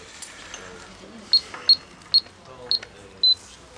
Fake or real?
real